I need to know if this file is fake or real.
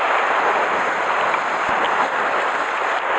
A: real